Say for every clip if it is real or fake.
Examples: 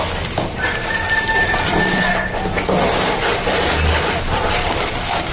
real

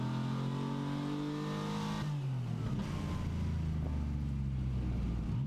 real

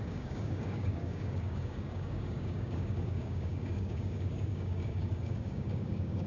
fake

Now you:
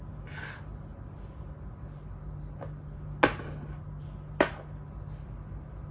real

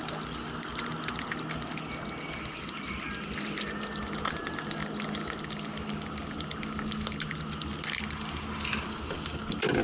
real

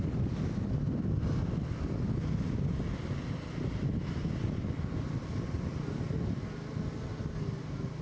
real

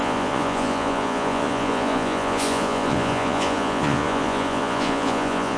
fake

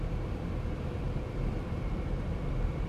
fake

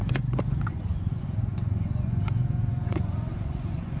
fake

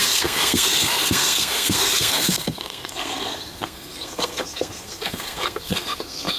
fake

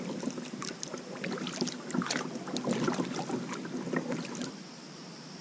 real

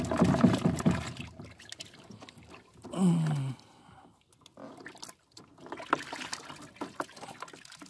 real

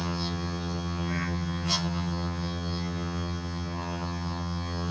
fake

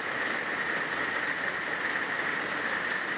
real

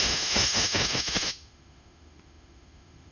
fake